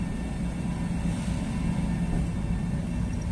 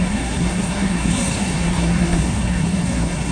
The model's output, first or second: second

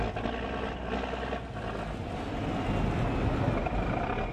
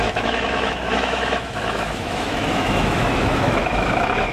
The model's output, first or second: second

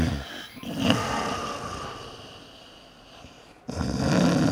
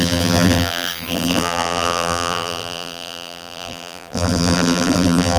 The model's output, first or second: second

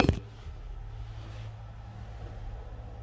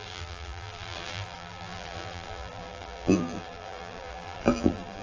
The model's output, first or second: second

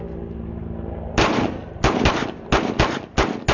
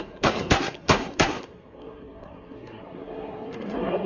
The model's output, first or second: second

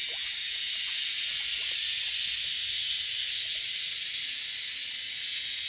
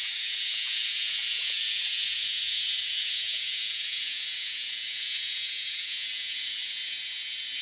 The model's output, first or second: second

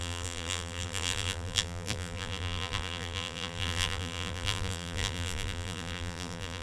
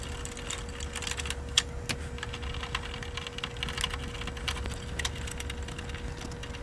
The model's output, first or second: first